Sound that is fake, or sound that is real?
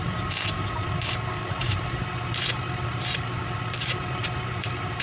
fake